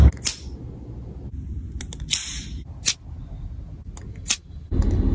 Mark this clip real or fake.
real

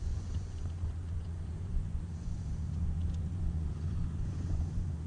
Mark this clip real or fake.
fake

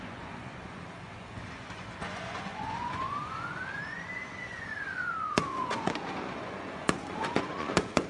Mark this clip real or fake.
fake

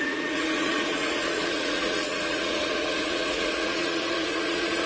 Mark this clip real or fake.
fake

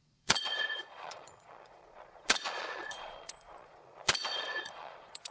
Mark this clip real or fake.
fake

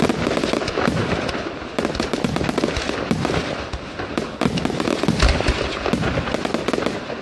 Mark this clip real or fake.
real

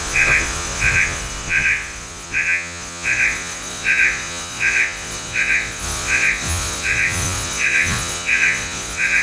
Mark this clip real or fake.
fake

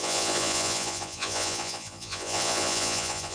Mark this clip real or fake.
fake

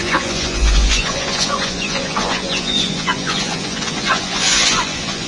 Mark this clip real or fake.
fake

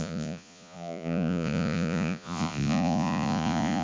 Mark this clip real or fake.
fake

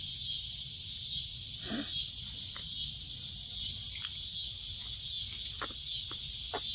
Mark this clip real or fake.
real